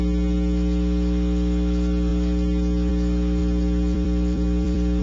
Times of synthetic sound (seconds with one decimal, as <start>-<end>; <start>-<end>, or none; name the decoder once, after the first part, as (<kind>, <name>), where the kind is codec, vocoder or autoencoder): 3.4-5.0 (vocoder, BigVGAN v2)